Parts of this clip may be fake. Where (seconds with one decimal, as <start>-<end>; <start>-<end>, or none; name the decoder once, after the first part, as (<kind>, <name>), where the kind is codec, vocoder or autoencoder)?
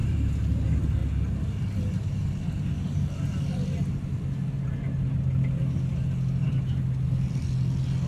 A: 0.0-0.6 (vocoder, BigVGAN v2)